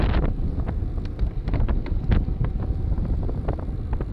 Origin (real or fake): real